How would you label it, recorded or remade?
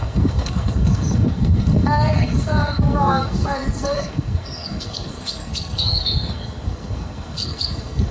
remade